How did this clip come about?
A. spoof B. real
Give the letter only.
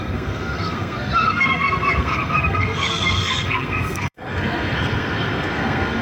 A